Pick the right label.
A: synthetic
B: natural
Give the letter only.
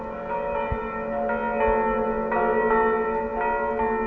B